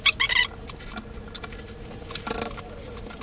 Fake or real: real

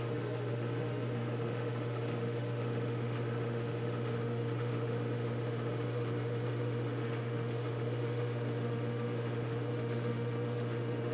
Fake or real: fake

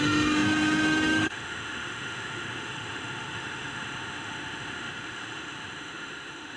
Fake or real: fake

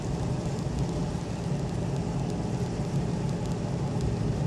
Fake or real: real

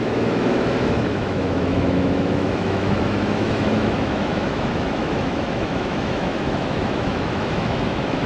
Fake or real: fake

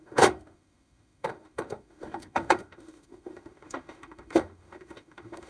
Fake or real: fake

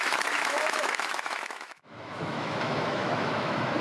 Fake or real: fake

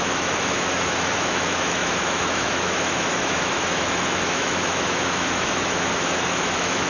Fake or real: fake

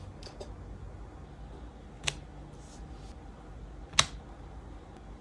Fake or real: real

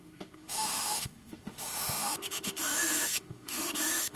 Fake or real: fake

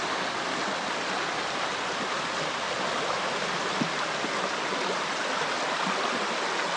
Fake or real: real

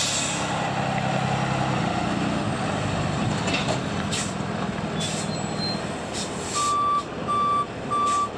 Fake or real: real